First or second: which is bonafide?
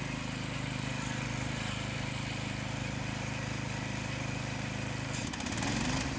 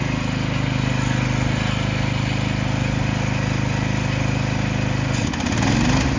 second